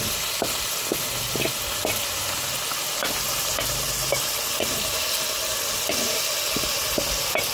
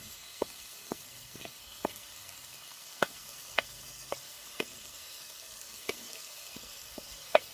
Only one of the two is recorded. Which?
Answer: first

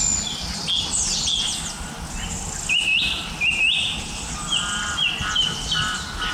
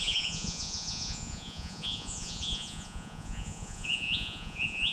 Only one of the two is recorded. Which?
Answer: first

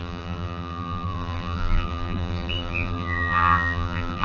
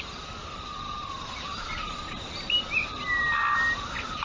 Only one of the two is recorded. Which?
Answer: second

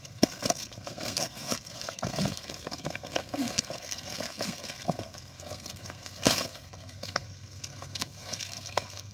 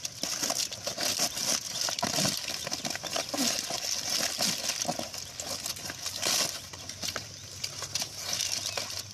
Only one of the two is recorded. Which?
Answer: second